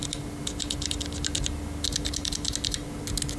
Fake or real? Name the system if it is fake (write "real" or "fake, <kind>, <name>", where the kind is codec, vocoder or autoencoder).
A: real